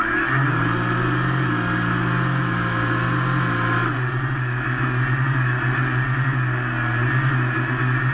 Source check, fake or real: real